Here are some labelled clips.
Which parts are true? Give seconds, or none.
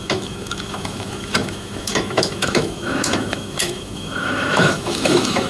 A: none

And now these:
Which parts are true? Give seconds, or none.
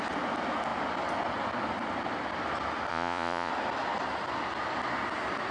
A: 0.0-2.9; 3.5-5.5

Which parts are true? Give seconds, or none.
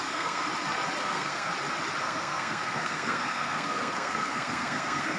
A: 0.5-1.0; 1.5-2.0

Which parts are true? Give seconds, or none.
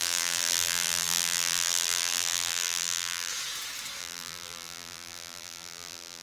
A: 3.3-4.0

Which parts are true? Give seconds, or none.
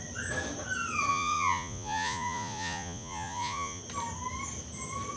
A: 0.0-1.1; 3.8-5.2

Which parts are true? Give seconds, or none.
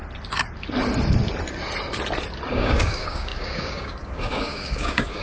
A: 0.0-2.5